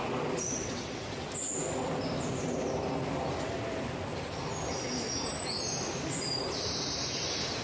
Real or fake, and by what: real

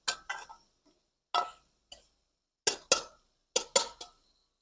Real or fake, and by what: real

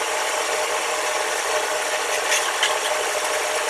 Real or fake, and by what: real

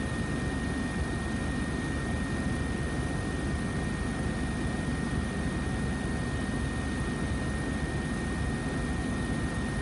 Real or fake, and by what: real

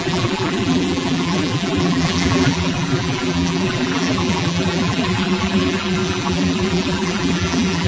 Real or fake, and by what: fake, vocoder, BigVGAN v2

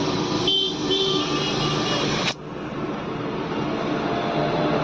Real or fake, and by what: real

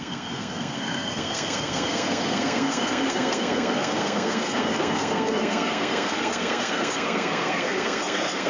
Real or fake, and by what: fake, codec, SNAC